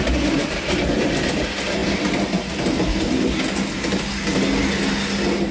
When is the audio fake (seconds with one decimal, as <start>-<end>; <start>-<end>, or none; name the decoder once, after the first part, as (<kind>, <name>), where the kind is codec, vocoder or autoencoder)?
none